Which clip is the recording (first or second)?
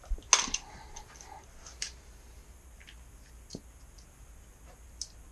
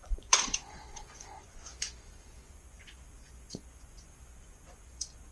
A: first